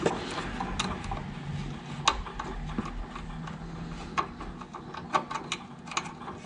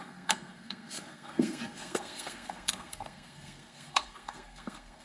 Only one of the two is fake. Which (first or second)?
second